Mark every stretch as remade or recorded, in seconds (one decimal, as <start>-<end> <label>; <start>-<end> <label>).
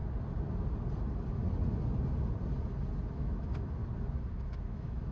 0.0-3.1 recorded; 3.1-3.8 remade; 3.8-4.3 recorded; 4.3-5.1 remade